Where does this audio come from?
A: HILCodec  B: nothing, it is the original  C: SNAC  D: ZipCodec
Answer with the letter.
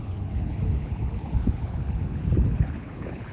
A